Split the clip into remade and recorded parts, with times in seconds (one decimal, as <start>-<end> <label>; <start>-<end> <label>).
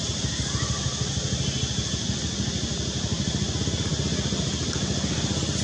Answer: 0.0-5.6 recorded